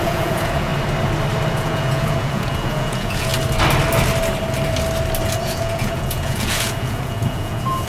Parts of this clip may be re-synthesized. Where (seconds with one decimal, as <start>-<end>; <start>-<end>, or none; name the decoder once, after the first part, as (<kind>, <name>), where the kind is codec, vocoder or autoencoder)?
0.0-0.7 (vocoder, Vocos); 1.5-3.3; 5.4-7.9